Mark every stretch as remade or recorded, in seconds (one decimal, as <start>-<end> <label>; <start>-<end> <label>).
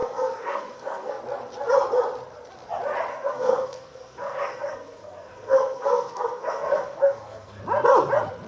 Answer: 0.0-1.2 remade; 1.2-3.1 recorded; 3.1-7.6 remade; 7.6-8.5 recorded